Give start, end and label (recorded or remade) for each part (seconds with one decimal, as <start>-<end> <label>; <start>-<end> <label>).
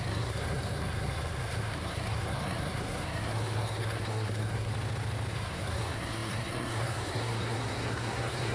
0.0-4.7 remade; 4.7-5.3 recorded; 5.3-8.5 remade